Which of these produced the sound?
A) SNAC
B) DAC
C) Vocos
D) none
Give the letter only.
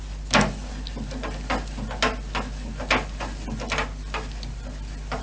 D